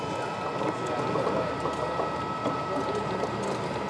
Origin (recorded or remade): recorded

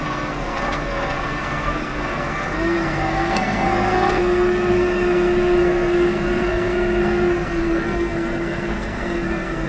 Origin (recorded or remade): remade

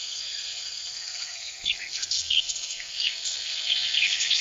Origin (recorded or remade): remade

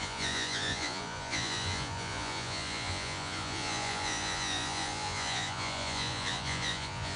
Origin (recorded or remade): remade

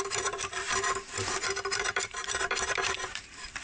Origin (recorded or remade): remade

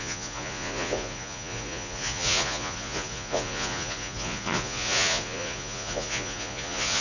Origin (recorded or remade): remade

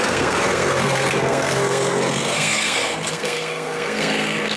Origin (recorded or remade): remade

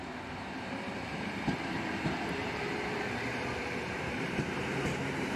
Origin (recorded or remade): remade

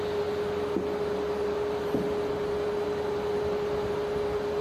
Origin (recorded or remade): recorded